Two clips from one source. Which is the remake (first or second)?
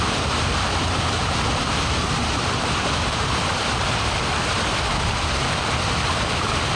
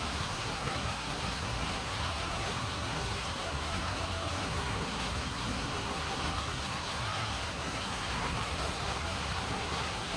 second